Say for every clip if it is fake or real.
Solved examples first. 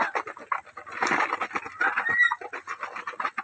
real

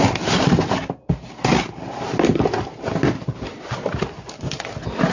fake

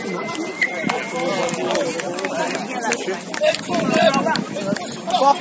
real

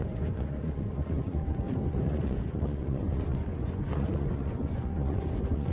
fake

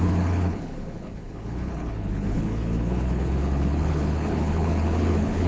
fake